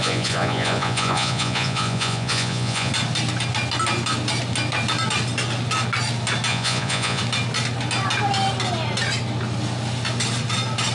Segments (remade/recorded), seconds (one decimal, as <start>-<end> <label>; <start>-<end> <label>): 0.0-2.9 remade; 2.9-6.5 recorded; 6.5-7.2 remade; 7.2-10.9 recorded